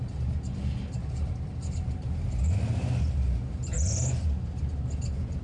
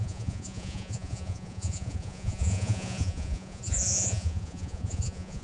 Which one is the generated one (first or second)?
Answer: second